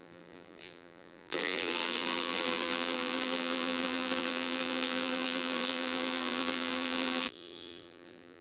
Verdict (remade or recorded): remade